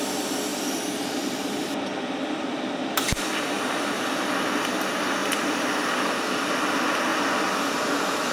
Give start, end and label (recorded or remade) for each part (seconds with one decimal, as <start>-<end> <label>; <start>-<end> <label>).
0.0-0.5 recorded; 0.5-2.6 remade; 2.6-5.2 recorded; 5.2-6.4 remade; 6.4-7.1 recorded; 7.1-8.3 remade